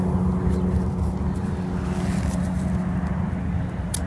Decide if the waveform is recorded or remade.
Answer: recorded